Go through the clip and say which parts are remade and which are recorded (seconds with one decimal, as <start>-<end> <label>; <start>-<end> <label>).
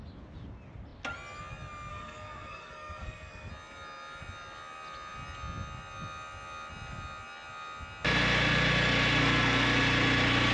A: 0.0-1.9 recorded; 1.9-3.5 remade; 3.5-10.5 recorded